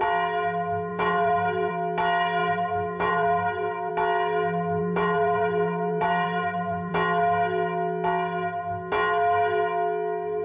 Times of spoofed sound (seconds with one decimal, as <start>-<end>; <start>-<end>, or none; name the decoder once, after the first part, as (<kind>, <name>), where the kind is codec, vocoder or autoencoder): 0.9-1.7 (vocoder, BigVGAN v2); 2.4-3.9; 4.8-6.9